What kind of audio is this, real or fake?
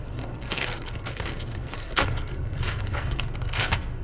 fake